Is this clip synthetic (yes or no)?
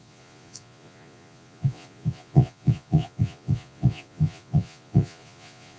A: yes